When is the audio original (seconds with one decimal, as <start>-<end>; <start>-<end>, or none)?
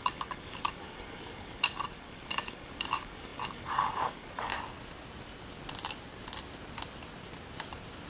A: 4.5-8.1